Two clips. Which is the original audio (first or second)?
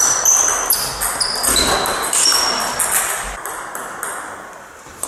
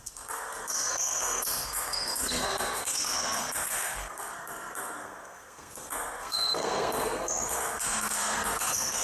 first